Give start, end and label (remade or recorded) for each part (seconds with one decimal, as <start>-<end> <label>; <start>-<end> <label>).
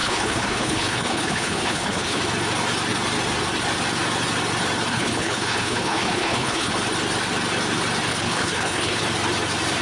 0.0-2.2 remade; 2.2-4.9 recorded; 4.9-6.7 remade; 6.7-8.1 recorded; 8.1-9.0 remade; 9.0-9.8 recorded